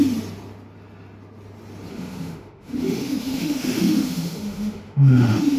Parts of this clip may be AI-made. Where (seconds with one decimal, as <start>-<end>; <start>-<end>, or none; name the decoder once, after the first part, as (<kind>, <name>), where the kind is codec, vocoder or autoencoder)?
1.9-5.6 (autoencoder, DAC-VAE)

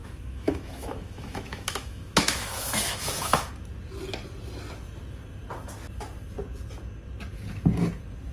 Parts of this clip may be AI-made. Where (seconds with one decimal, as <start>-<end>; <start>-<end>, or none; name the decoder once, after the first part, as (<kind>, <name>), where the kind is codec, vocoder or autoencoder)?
0.0-3.5 (autoencoder, DAC-VAE)

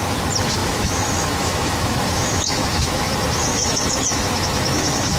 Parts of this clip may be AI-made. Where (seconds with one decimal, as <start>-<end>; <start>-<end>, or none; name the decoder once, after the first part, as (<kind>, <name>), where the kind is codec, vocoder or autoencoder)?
0.6-3.1 (autoencoder, DAC-VAE); 3.5-5.2

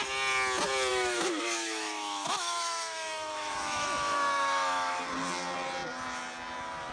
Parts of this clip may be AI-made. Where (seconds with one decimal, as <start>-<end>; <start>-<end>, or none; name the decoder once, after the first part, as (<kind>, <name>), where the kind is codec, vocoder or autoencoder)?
0.9-5.0 (autoencoder, DAC-VAE)

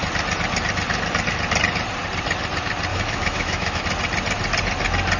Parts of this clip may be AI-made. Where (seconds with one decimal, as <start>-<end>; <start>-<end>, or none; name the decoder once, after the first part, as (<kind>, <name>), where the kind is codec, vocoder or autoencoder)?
2.9-3.8 (autoencoder, DAC-VAE)

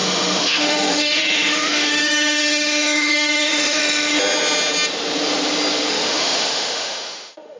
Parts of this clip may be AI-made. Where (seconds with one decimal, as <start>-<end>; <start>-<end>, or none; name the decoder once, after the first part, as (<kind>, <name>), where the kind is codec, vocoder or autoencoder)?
0.0-3.8 (autoencoder, DAC-VAE); 5.9-7.6